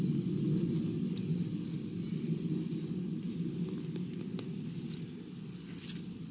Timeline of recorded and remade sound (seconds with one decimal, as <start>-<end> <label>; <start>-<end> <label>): 0.0-6.3 recorded